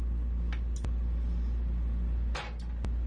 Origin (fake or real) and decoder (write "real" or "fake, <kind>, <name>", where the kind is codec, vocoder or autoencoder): real